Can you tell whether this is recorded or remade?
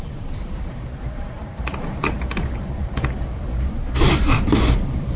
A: remade